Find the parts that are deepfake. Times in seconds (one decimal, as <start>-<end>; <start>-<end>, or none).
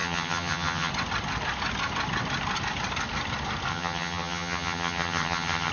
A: 0.0-0.9; 3.7-5.7